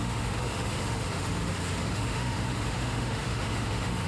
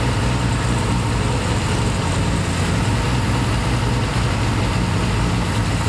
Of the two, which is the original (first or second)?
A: second